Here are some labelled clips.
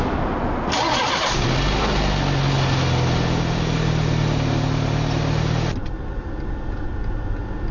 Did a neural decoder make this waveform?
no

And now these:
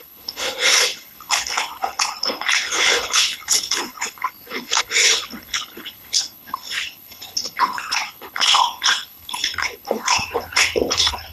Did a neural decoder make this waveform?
yes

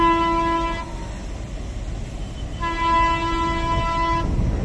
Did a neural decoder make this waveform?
no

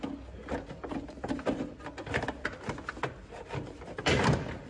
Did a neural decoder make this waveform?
no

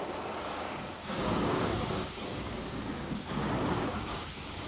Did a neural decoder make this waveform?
yes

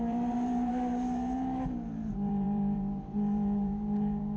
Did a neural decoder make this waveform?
yes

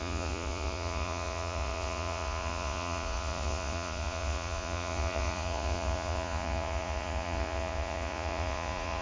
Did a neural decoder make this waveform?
yes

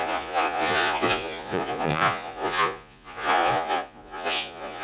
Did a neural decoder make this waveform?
yes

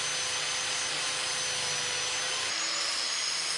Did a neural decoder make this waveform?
no